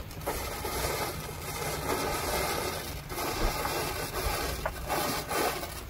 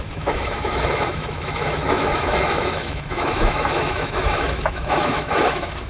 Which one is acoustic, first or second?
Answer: first